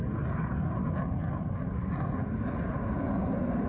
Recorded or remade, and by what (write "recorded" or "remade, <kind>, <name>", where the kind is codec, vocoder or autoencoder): recorded